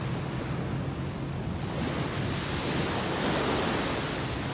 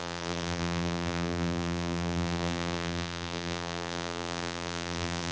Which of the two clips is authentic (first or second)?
first